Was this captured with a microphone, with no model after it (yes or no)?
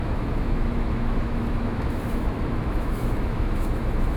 no